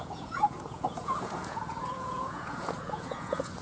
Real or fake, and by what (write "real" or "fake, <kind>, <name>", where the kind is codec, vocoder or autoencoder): fake, vocoder, Vocos